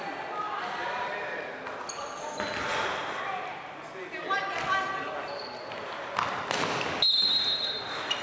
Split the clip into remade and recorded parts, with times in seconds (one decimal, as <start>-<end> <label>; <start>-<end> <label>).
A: 0.0-8.2 recorded